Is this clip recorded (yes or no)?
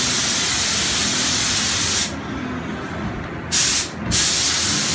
yes